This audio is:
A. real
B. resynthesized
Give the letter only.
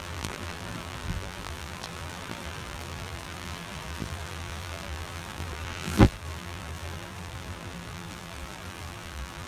B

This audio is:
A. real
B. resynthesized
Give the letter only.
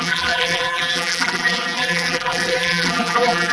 B